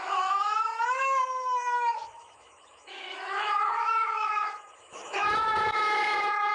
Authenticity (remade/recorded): remade